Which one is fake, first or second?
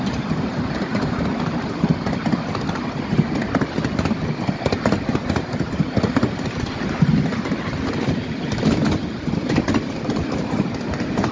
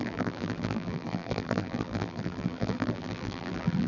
second